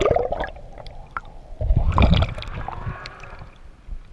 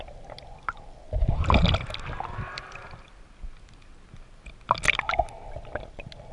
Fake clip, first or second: first